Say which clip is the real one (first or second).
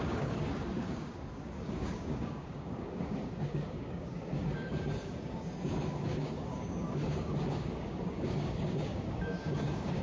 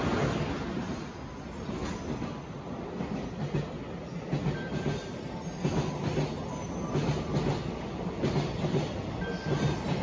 second